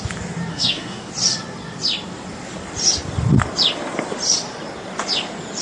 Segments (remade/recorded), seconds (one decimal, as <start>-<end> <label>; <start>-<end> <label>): 0.0-0.5 recorded; 0.5-1.1 remade; 1.1-5.6 recorded